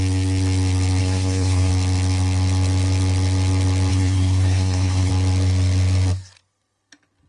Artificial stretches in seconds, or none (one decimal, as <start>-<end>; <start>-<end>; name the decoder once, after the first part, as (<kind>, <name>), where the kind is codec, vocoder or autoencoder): 1.0-1.7 (codec, SNAC); 3.9-5.1